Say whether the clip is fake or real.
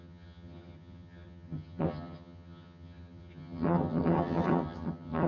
fake